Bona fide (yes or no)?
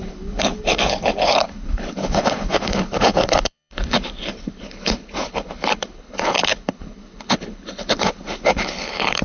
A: no